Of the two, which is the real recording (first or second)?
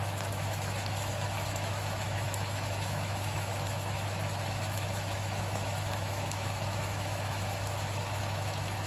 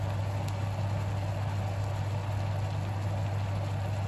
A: second